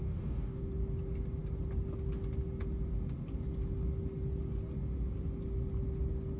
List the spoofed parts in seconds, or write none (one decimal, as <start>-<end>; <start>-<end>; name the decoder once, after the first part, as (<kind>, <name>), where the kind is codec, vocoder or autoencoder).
0.0-0.6 (codec, DAC)